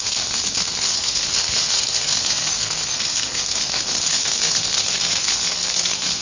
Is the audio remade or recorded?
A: remade